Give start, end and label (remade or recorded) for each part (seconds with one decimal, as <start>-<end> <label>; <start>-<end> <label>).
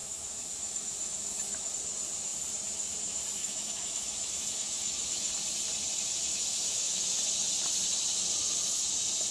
0.0-1.7 remade; 1.7-3.4 recorded; 3.4-5.3 remade; 5.3-6.3 recorded; 6.3-7.2 remade; 7.2-9.3 recorded